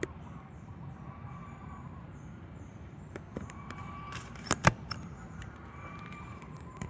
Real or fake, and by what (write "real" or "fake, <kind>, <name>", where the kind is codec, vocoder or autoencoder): fake, vocoder, BigVGAN v2